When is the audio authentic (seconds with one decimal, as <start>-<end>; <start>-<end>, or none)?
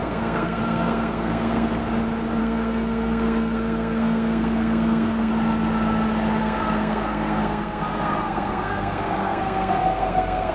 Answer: 1.8-2.4; 5.3-6.4